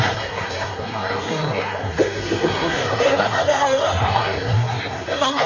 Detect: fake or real fake